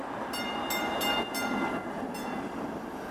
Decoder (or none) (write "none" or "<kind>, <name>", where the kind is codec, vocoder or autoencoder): none